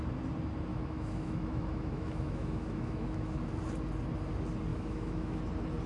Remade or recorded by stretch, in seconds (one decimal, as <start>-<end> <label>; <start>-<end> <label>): 0.0-0.7 recorded; 0.7-3.5 remade; 3.5-4.7 recorded; 4.7-5.4 remade; 5.4-5.9 recorded